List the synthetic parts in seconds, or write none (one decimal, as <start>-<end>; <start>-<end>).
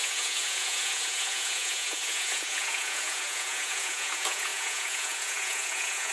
0.0-6.1